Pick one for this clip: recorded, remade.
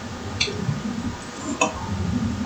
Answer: recorded